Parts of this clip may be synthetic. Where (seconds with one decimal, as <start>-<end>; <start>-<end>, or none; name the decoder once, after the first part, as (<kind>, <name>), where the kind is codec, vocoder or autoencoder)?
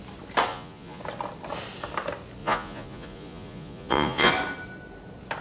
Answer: 0.5-1.0 (vocoder, Vocos); 2.4-4.3